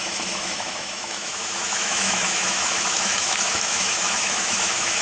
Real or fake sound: fake